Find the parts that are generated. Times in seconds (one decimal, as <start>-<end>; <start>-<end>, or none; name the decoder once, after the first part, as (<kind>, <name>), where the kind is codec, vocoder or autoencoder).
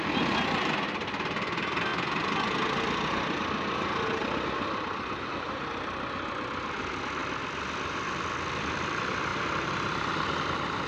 0.0-1.9 (vocoder, BigVGAN v2); 3.4-10.9